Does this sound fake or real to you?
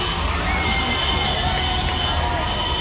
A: real